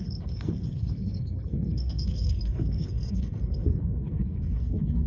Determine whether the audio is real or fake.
fake